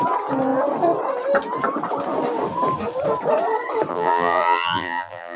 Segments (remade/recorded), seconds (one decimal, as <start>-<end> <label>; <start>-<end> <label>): 0.0-3.9 recorded; 3.9-5.4 remade